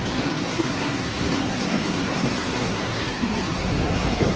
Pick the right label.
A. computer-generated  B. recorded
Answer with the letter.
A